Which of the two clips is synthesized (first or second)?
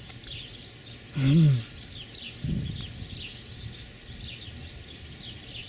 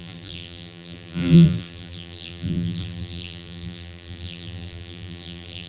second